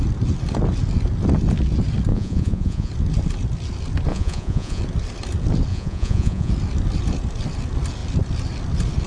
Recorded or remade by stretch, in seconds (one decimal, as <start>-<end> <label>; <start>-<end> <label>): 0.0-2.1 recorded; 2.1-2.9 remade; 2.9-4.1 recorded; 4.1-4.8 remade; 4.8-5.7 recorded; 5.7-6.5 remade; 6.5-9.1 recorded